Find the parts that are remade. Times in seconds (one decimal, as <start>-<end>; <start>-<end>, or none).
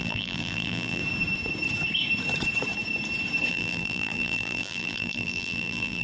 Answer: 0.0-1.0; 3.5-6.0